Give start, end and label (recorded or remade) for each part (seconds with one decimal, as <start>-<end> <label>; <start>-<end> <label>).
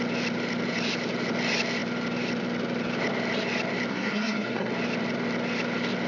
0.0-3.9 recorded; 3.9-4.7 remade; 4.7-6.1 recorded